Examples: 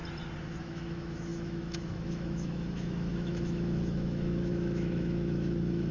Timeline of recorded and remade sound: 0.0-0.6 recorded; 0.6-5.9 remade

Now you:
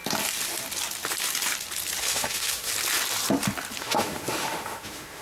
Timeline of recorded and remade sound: 0.0-2.0 recorded; 2.0-2.7 remade; 2.7-3.8 recorded; 3.8-5.2 remade

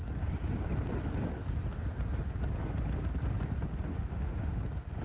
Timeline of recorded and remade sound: 0.0-3.9 recorded; 3.9-4.6 remade; 4.6-5.0 recorded

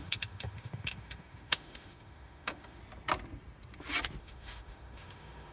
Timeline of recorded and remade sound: 0.0-2.8 remade; 2.8-4.2 recorded; 4.2-5.5 remade